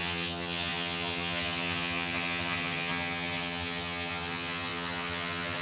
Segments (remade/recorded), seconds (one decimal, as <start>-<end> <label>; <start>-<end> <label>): 0.0-5.6 remade